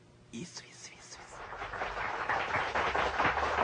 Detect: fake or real fake